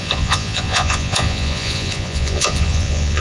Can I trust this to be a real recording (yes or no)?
no